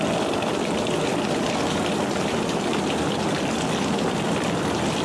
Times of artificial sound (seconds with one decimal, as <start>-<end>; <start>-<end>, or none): none